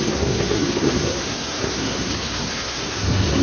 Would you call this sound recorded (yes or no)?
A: no